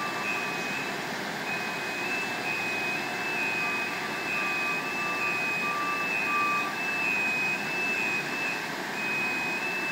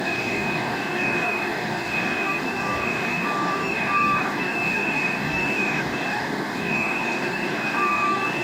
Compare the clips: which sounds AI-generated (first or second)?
second